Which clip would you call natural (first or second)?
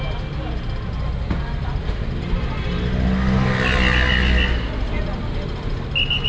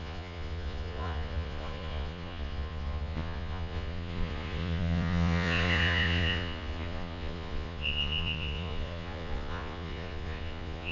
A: first